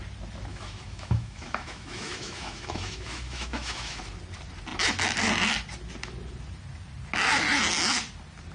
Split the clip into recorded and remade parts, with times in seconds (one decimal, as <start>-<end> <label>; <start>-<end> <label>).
0.0-0.5 recorded; 0.5-4.0 remade; 4.0-8.5 recorded